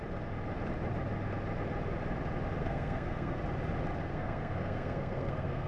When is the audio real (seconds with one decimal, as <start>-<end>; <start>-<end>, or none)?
0.0-2.6; 3.4-4.1